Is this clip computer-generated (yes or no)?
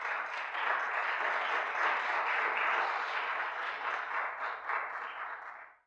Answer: no